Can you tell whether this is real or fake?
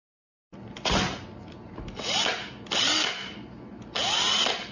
real